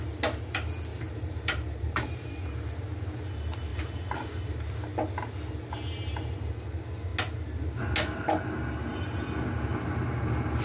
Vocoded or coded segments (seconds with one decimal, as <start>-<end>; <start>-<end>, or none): 0.9-2.4; 3.7-4.6